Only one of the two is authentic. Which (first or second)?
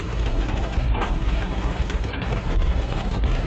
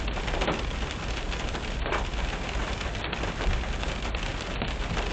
second